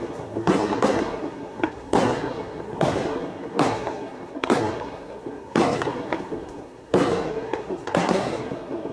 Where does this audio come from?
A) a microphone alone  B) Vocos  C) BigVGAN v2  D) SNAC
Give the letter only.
D